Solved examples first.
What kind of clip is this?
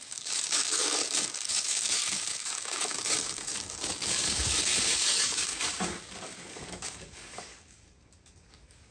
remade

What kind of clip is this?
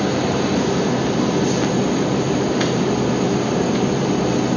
recorded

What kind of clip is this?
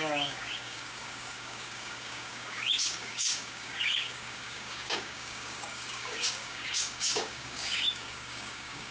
remade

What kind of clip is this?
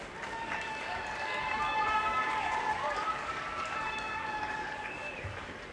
remade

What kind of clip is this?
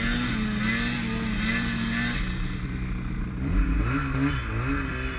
recorded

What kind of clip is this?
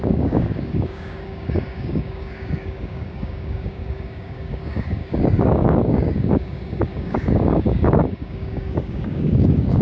remade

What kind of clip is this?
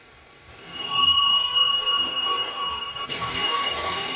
remade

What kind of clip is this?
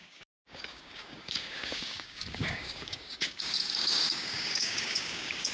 remade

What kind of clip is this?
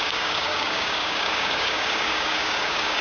remade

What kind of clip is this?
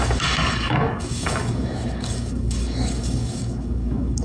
remade